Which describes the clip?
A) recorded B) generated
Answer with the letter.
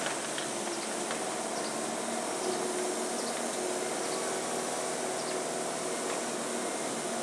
A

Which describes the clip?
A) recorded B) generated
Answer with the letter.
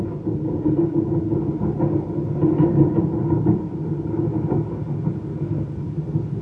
A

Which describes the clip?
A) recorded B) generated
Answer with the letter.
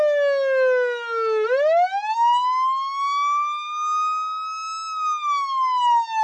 A